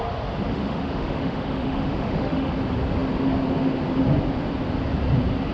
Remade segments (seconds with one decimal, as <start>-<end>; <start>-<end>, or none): 0.5-2.5